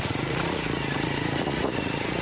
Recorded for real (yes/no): no